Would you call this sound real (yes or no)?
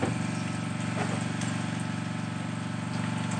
yes